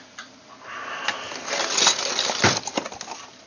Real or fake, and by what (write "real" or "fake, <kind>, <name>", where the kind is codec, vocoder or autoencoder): real